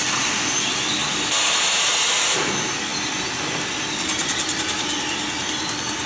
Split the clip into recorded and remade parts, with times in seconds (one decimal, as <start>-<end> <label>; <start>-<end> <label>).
0.0-6.1 recorded